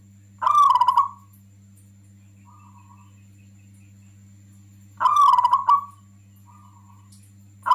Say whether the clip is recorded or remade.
recorded